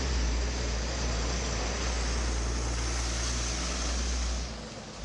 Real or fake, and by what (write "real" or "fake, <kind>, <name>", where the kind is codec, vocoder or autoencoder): real